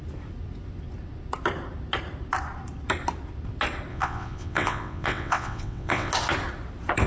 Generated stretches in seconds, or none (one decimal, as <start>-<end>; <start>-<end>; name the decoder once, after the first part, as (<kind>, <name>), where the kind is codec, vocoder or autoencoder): 3.9-6.1 (vocoder, WaveNeXt)